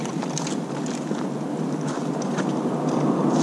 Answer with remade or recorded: recorded